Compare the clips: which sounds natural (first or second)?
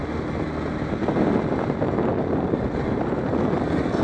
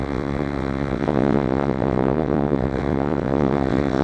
first